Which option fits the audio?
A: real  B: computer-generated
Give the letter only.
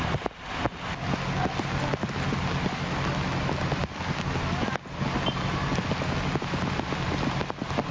A